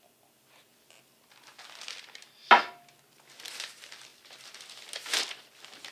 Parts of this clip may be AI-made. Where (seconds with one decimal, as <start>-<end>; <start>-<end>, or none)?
none